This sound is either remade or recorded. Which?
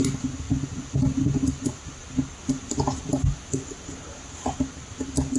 recorded